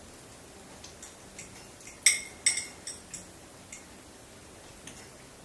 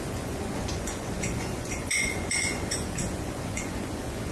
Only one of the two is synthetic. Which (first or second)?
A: second